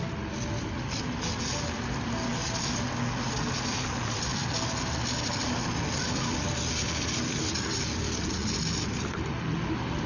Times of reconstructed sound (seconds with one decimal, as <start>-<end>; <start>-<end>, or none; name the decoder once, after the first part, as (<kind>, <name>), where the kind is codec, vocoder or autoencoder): none